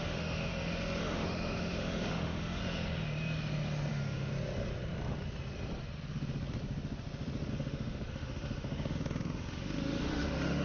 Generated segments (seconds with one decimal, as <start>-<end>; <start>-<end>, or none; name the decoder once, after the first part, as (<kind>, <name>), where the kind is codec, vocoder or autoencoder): 0.0-0.5 (autoencoder, DAC-VAE); 1.0-2.6; 3.9-4.3; 7.5-10.6